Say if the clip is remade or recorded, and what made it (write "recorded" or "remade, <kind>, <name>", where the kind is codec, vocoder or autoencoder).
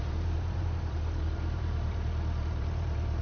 remade, vocoder, BigVGAN v2